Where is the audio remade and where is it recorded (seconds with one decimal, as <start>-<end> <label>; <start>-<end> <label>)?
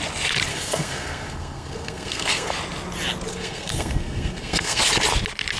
0.0-0.5 recorded; 0.5-2.5 remade; 2.5-3.3 recorded; 3.3-4.8 remade; 4.8-5.6 recorded